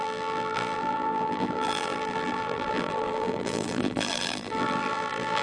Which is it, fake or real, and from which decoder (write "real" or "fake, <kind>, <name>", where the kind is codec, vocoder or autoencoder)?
fake, vocoder, BigVGAN v2